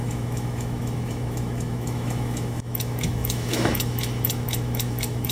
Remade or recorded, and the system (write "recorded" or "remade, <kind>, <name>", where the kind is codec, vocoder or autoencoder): remade, autoencoder, DAC-VAE